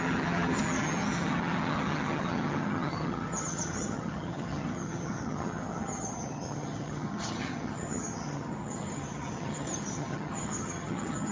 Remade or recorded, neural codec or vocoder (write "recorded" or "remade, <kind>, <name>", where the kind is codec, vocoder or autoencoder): remade, vocoder, HiFi-GAN